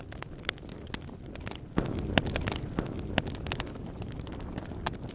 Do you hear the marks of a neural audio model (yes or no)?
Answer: no